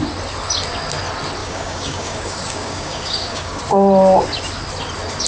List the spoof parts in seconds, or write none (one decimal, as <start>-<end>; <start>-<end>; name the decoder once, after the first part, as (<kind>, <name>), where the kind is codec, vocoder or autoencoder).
1.4-3.6 (codec, DAC)